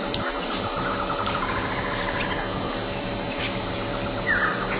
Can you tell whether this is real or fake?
real